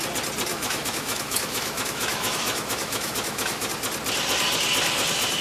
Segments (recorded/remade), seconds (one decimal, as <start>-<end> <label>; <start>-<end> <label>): 0.0-0.5 recorded; 0.5-3.7 remade; 3.7-5.4 recorded